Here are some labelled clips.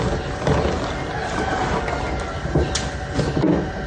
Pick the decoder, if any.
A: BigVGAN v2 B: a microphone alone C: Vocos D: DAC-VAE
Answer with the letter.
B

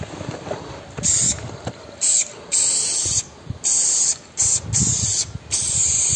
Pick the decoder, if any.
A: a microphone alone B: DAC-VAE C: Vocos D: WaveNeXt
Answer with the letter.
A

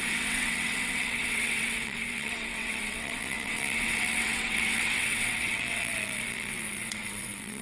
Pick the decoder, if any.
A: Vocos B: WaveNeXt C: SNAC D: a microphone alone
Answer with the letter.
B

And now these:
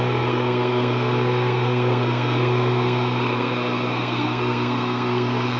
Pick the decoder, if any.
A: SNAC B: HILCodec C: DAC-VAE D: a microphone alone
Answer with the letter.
A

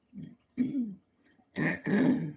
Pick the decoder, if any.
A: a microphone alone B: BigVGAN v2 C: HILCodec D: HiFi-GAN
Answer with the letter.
D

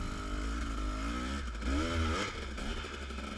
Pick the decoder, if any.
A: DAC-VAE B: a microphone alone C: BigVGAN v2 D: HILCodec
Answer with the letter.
B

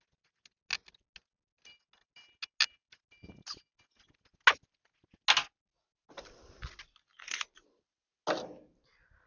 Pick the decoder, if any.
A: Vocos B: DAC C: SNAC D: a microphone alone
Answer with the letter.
D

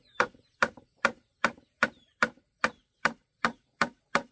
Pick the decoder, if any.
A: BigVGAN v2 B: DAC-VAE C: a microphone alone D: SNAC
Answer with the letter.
A